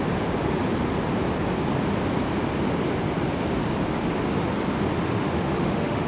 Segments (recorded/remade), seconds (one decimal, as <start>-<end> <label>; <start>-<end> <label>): 0.0-5.0 recorded; 5.0-6.1 remade